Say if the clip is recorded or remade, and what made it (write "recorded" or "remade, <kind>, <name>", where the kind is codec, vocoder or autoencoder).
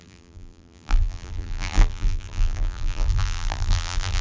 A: remade, vocoder, BigVGAN v2